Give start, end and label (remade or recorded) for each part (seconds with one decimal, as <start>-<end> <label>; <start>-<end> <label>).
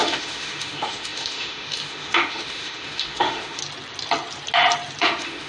0.0-3.6 remade; 3.6-5.0 recorded; 5.0-5.5 remade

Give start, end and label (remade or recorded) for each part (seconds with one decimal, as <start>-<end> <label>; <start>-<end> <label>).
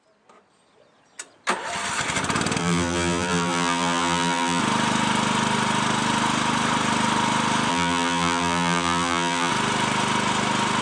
0.0-2.6 recorded; 2.6-4.6 remade; 4.6-7.7 recorded; 7.7-9.5 remade; 9.5-10.8 recorded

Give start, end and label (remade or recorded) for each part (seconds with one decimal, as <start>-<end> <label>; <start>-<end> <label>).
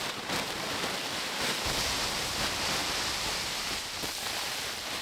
0.0-2.8 remade; 2.8-4.3 recorded; 4.3-5.0 remade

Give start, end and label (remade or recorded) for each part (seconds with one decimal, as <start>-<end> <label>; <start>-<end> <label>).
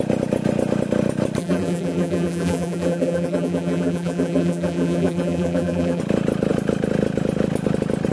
0.0-1.4 recorded; 1.4-6.0 remade; 6.0-8.1 recorded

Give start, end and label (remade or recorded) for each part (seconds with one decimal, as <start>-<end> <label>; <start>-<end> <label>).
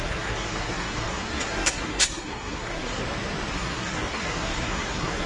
0.0-3.0 remade; 3.0-3.5 recorded; 3.5-5.3 remade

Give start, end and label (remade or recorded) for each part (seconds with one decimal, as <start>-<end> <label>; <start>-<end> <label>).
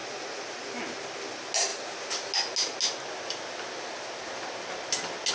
0.0-0.7 remade; 0.7-5.3 recorded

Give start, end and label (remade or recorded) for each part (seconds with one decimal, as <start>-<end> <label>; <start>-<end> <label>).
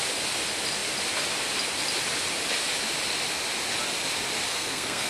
0.0-4.5 recorded; 4.5-5.1 remade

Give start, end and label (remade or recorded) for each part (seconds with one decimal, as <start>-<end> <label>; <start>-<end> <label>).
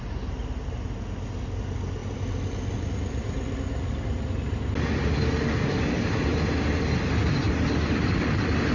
0.0-8.7 recorded